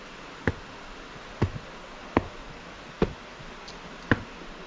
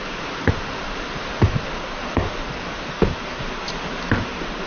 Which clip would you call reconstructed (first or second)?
second